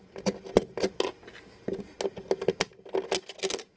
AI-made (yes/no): no